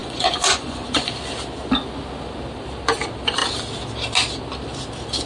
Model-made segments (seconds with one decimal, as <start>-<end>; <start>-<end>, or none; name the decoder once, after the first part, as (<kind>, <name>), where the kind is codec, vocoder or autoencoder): 0.0-1.1 (vocoder, Vocos)